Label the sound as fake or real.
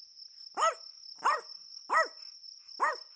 real